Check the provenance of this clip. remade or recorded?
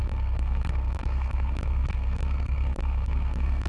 remade